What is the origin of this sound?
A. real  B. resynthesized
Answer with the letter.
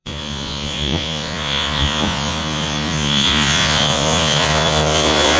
B